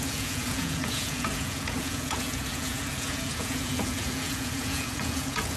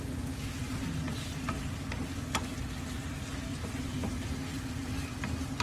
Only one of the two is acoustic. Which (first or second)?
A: second